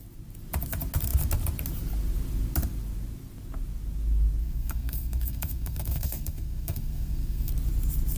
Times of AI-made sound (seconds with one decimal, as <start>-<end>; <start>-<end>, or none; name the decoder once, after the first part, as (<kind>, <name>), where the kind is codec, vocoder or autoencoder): 4.4-7.5 (codec, SNAC)